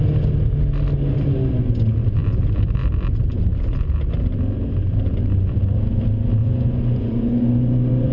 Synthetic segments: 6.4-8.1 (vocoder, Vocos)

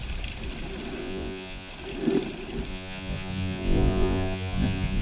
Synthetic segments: 1.0-1.7 (vocoder, Vocos); 2.7-5.0